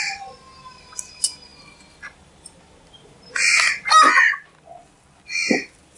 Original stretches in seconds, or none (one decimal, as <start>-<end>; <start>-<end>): 0.0-6.0